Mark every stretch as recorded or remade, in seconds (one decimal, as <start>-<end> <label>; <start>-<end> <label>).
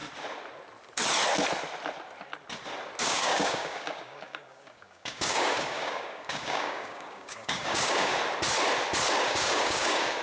0.0-3.0 recorded; 3.0-8.1 remade; 8.1-9.2 recorded; 9.2-10.2 remade